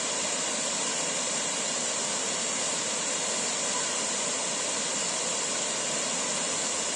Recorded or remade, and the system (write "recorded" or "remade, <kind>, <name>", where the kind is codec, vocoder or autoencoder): recorded